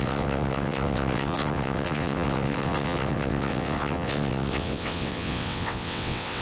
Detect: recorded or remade remade